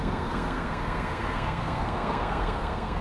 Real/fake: fake